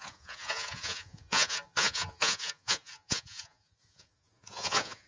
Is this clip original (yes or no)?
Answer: no